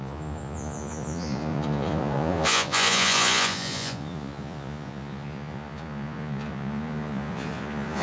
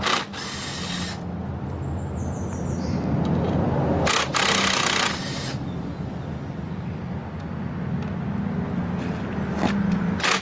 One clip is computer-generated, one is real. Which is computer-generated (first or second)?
first